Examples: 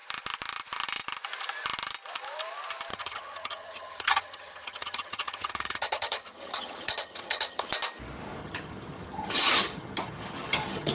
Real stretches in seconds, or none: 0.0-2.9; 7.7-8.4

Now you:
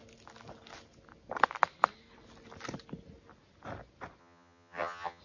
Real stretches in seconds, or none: 0.0-4.2